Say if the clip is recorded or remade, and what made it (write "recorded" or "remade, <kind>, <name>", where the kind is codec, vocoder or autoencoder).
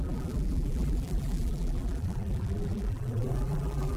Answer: remade, vocoder, BigVGAN v2